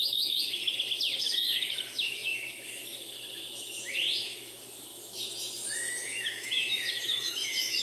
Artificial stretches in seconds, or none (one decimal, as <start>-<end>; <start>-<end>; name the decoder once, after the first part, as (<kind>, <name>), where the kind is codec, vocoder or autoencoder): 0.0-0.6 (autoencoder, DAC-VAE); 1.2-7.8